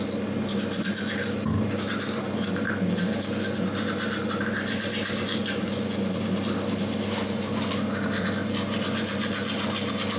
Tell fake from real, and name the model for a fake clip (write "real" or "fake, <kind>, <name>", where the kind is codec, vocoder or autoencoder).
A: real